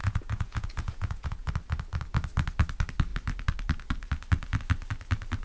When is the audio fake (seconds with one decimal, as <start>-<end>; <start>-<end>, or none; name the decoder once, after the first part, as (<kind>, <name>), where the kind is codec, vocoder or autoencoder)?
0.0-1.5 (vocoder, Vocos)